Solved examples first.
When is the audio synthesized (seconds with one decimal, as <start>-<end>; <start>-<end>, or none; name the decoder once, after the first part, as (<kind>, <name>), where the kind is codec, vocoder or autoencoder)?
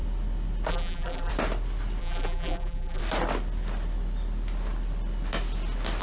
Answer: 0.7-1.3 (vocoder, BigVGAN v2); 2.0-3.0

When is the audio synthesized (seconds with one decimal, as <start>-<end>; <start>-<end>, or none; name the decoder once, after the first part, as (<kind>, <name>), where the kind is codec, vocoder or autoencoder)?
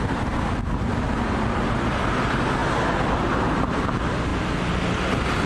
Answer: none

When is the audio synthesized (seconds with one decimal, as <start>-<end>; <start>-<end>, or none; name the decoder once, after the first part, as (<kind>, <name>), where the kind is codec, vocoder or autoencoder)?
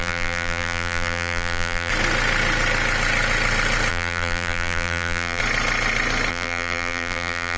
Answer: 0.0-1.9 (vocoder, BigVGAN v2); 3.9-5.4; 6.3-7.6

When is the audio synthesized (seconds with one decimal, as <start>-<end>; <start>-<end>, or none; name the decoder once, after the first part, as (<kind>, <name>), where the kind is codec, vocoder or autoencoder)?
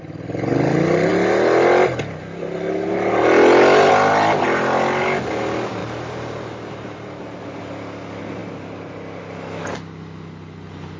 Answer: 5.8-7.2 (vocoder, BigVGAN v2); 8.4-9.2